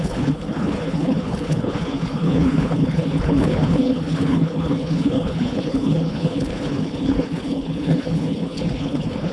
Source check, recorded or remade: remade